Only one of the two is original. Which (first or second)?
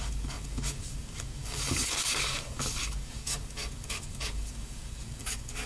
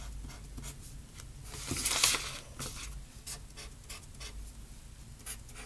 second